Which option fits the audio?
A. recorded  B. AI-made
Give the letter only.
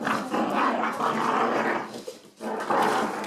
A